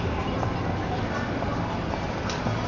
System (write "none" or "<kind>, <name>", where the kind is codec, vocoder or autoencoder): none